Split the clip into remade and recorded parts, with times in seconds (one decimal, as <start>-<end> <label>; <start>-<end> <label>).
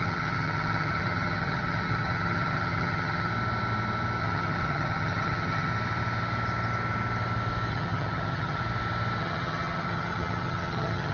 0.0-3.3 remade; 3.3-4.2 recorded; 4.2-5.7 remade; 5.7-7.7 recorded; 7.7-8.6 remade; 8.6-9.2 recorded; 9.2-11.1 remade